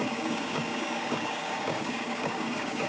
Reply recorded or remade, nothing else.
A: remade